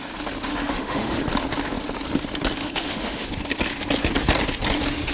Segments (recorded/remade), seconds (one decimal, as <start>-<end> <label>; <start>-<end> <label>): 0.0-0.5 recorded; 0.5-1.2 remade; 1.2-2.6 recorded; 2.6-3.3 remade; 3.3-5.1 recorded